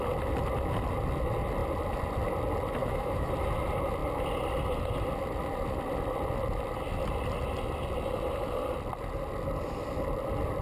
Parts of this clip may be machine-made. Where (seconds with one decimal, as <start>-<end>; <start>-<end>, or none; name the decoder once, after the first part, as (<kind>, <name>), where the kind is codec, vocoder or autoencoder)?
2.8-3.3 (autoencoder, DAC-VAE)